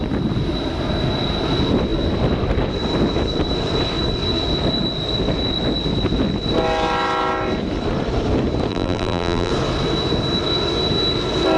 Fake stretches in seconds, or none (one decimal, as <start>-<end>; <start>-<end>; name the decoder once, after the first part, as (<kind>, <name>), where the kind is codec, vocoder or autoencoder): 8.7-9.5 (vocoder, BigVGAN v2)